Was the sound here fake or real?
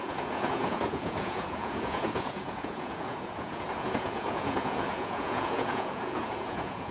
fake